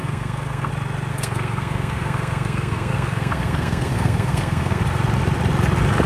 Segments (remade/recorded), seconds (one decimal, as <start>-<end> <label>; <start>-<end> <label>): 0.0-0.7 remade; 0.7-1.1 recorded; 1.1-4.8 remade; 4.8-6.1 recorded